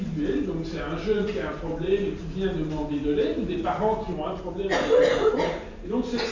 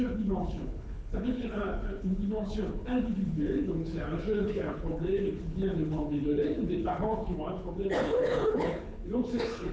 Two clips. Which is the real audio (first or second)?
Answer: first